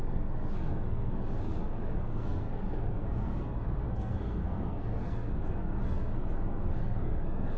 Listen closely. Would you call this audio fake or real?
fake